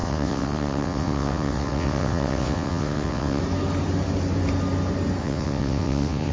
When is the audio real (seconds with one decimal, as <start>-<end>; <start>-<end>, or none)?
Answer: 3.4-5.2

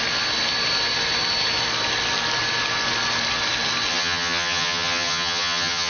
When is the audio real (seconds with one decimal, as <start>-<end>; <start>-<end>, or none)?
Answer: 0.0-3.9

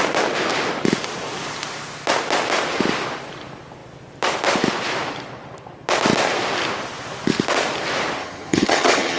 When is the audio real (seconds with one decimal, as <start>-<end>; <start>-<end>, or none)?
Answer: 0.0-8.2

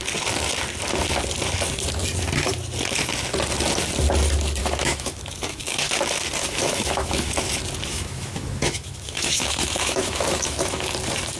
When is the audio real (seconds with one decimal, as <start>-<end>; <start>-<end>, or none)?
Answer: 0.0-4.6; 5.9-6.4; 7.3-7.9; 10.9-11.4

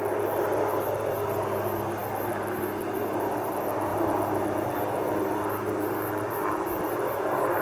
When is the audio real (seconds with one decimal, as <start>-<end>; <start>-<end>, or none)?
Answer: 0.0-7.6